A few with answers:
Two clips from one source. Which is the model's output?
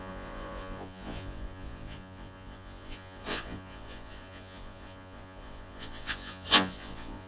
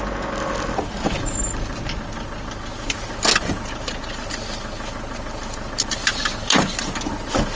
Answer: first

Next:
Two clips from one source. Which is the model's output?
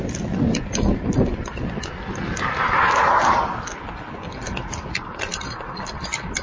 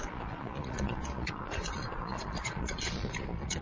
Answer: second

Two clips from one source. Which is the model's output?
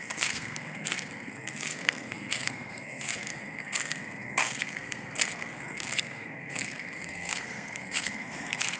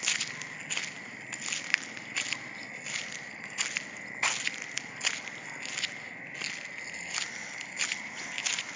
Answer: first